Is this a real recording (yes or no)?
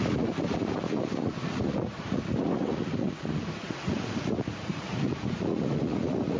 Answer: no